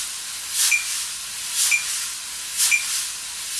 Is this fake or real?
real